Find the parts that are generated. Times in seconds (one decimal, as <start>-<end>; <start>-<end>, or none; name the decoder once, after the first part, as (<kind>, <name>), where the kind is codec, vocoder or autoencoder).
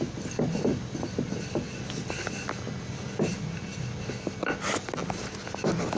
none